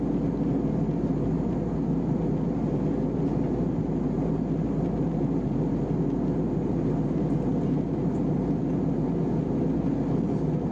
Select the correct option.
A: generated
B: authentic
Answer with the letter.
B